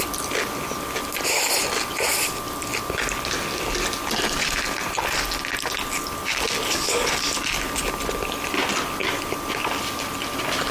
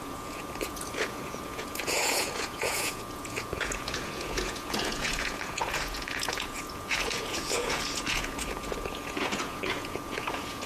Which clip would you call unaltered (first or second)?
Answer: first